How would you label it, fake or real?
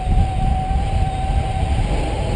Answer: real